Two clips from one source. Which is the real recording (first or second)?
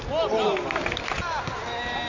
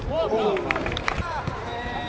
first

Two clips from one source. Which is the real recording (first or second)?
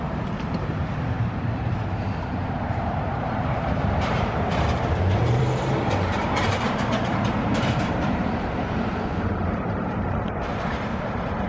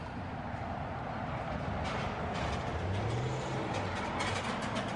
second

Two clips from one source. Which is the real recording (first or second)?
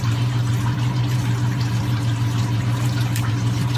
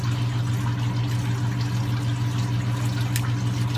second